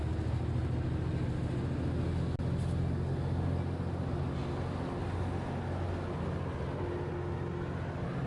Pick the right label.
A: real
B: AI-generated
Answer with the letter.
A